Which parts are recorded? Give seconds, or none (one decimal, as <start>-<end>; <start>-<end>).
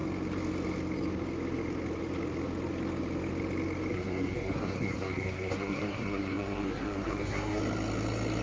0.0-3.9; 7.6-8.4